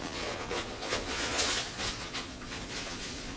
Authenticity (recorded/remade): remade